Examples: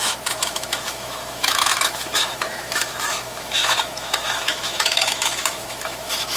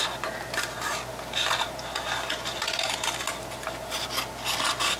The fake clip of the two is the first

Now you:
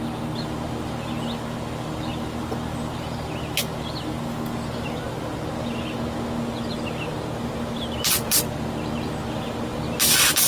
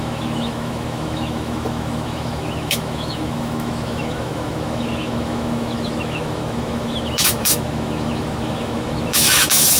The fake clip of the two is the second